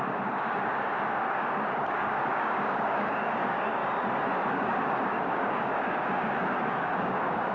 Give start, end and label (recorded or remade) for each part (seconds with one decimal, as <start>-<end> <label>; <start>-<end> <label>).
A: 0.0-3.8 remade; 3.8-4.6 recorded; 4.6-7.5 remade